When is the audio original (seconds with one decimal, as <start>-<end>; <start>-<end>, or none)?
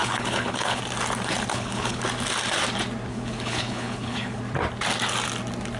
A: 0.8-1.5; 2.0-3.1; 4.4-5.8